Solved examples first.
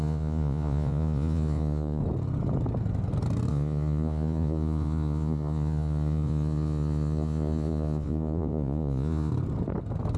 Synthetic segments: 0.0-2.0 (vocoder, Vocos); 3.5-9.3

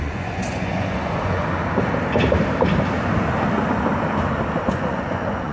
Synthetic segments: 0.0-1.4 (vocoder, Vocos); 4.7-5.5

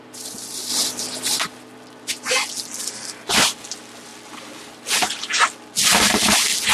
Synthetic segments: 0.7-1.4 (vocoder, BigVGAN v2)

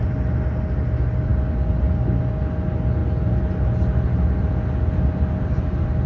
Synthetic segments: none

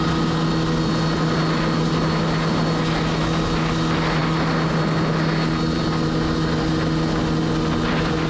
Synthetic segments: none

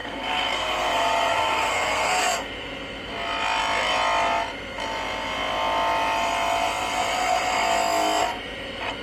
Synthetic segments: 0.0-2.2 (codec, SNAC)